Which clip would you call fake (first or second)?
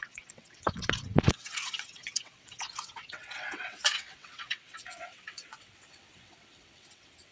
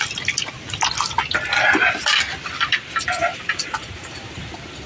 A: first